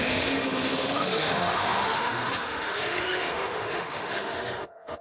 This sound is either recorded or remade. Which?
remade